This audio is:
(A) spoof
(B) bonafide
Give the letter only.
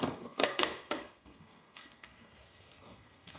A